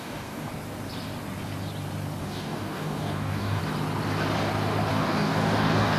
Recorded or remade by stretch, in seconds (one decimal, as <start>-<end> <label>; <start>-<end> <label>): 0.0-0.5 remade; 0.5-2.2 recorded; 2.2-3.6 remade; 3.6-4.9 recorded; 4.9-6.0 remade

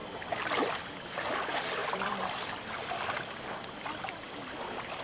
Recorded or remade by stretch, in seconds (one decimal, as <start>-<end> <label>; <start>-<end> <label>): 0.0-0.7 recorded; 0.7-5.0 remade

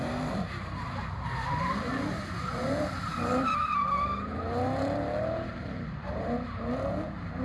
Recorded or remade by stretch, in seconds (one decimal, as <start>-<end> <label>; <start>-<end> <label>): 0.0-0.4 remade; 0.4-1.5 recorded; 1.5-7.4 remade